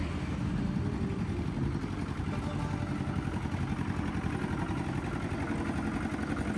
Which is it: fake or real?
real